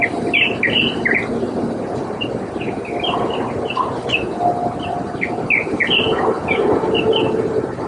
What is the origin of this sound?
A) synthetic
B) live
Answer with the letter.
B